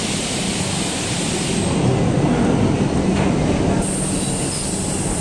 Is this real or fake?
real